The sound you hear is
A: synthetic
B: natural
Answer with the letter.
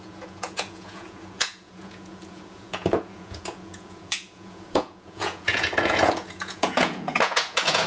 A